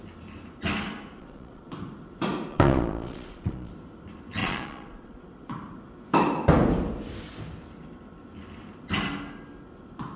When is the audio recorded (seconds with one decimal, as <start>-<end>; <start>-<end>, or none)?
0.0-1.2; 1.7-2.5; 3.7-4.4; 5.2-10.2